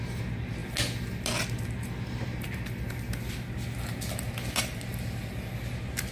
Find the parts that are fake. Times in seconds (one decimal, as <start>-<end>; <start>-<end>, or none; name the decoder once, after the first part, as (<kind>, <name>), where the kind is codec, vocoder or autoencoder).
none